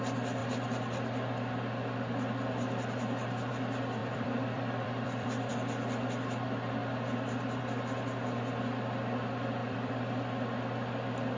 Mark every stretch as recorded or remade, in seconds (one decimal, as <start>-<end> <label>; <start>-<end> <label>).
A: 0.0-4.0 recorded; 4.0-5.5 remade; 5.5-9.6 recorded; 9.6-10.1 remade; 10.1-11.4 recorded